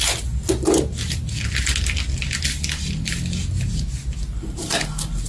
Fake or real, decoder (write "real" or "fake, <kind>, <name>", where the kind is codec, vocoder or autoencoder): real